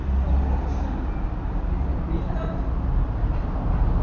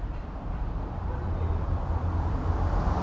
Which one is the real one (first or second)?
first